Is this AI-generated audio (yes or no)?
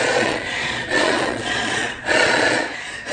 yes